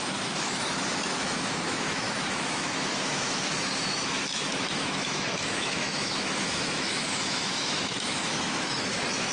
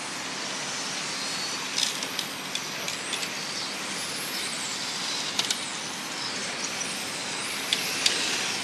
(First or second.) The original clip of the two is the second